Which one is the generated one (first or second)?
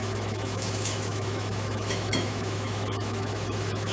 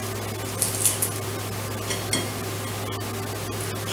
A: first